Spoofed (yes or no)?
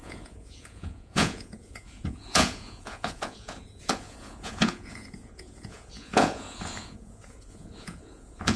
yes